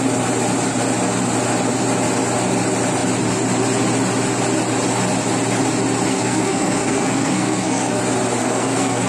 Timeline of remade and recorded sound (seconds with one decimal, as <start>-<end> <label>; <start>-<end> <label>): 0.0-6.1 recorded; 6.1-8.0 remade; 8.0-8.4 recorded; 8.4-9.1 remade